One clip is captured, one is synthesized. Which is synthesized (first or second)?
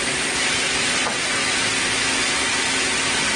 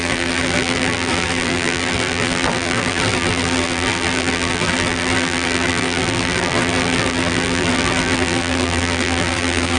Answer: second